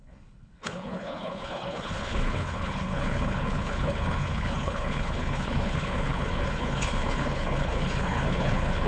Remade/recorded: remade